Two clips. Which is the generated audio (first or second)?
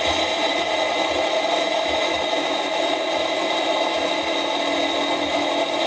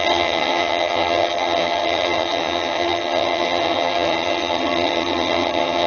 second